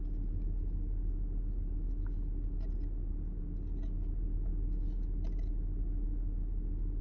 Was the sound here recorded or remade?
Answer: recorded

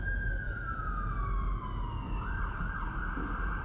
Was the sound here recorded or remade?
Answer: recorded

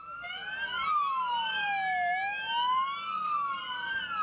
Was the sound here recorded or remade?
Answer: recorded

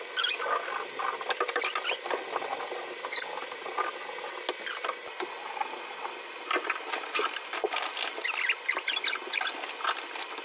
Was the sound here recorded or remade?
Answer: recorded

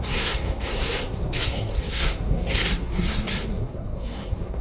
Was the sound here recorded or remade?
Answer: remade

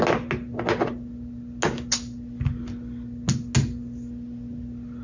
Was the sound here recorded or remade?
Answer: recorded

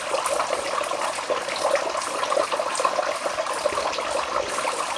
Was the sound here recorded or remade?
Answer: recorded